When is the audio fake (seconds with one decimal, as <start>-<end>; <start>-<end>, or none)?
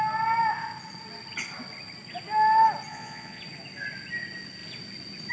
2.9-3.4